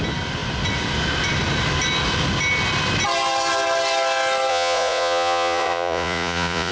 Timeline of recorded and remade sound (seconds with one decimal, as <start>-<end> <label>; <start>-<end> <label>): 0.0-4.5 recorded; 4.5-6.7 remade